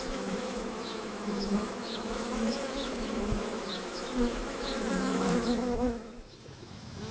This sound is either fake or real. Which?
fake